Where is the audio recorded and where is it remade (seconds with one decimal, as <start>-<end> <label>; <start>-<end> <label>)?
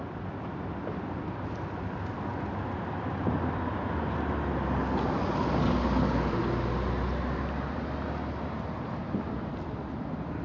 0.0-9.5 recorded; 9.5-10.4 remade